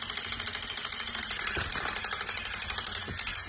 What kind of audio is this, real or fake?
real